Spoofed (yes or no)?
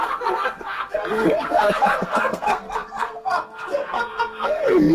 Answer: yes